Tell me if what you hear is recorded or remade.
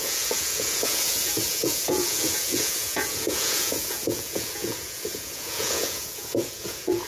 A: remade